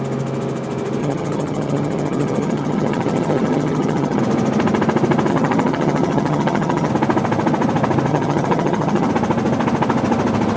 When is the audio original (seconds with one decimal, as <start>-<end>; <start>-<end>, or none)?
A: 0.0-1.0; 4.2-5.3; 6.9-8.1; 9.1-10.6